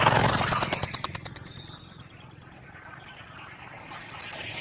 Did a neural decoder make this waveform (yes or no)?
no